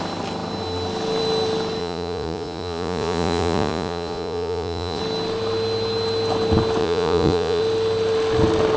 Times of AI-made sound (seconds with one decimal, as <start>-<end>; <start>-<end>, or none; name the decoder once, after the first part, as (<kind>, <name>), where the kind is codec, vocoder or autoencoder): 1.8-5.0 (vocoder, Vocos); 6.8-7.6